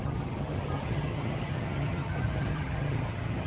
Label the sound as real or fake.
fake